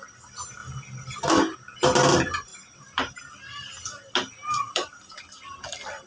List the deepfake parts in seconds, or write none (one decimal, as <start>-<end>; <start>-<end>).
2.5-3.2; 4.4-5.2

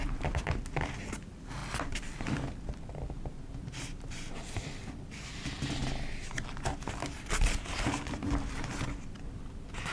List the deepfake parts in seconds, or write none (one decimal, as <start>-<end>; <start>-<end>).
0.0-1.6; 2.8-5.8; 9.2-9.9